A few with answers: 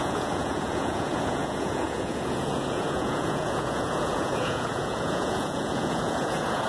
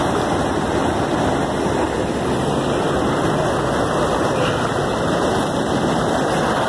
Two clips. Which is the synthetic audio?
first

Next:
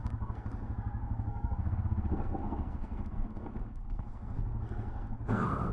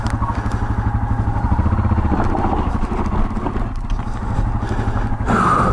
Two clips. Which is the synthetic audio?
first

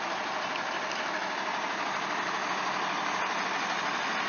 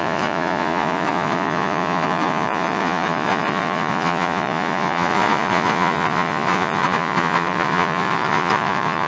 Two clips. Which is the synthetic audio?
second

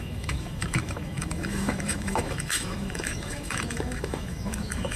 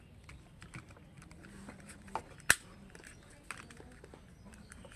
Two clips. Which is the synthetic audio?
first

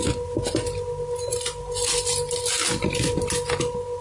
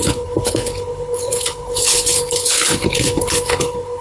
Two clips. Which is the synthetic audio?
second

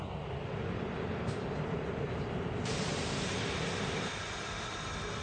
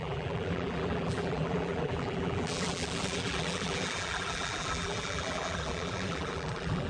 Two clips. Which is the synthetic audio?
second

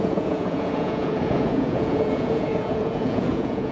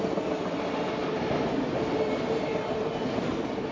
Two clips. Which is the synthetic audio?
first